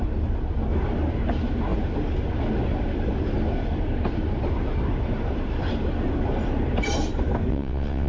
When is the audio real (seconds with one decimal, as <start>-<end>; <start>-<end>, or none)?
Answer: 0.0-7.5